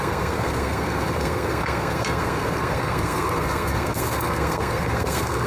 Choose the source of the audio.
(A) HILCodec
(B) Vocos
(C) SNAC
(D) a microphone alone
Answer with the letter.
C